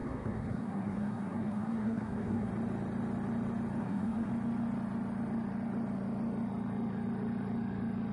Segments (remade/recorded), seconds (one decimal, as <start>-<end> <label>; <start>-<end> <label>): 0.0-2.5 remade; 2.5-3.8 recorded; 3.8-4.3 remade; 4.3-8.1 recorded